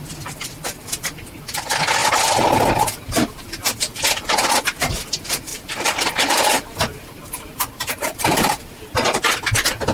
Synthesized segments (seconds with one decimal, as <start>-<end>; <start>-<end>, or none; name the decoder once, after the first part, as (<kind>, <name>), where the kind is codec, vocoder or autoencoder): 5.5-6.1 (vocoder, BigVGAN v2); 6.5-8.5